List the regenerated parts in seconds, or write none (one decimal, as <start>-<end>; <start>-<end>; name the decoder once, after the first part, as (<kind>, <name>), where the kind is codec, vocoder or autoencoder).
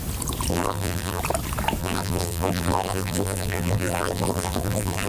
0.5-1.2 (vocoder, BigVGAN v2); 1.8-5.1